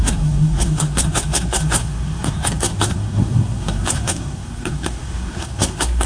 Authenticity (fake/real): fake